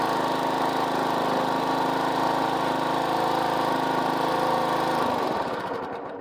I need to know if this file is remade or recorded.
recorded